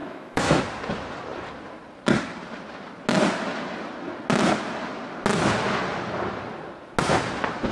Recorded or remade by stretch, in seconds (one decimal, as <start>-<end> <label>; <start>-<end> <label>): 0.0-0.6 remade; 0.6-7.7 recorded